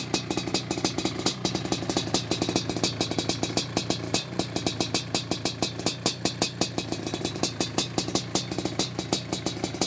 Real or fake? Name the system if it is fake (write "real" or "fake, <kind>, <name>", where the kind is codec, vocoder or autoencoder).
real